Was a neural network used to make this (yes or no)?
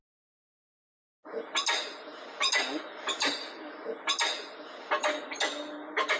no